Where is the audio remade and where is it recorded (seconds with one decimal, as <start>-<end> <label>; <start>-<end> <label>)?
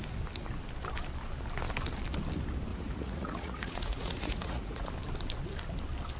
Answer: 0.0-2.7 recorded; 2.7-4.9 remade; 4.9-6.2 recorded